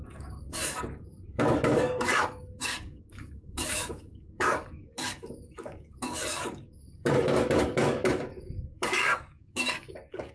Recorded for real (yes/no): no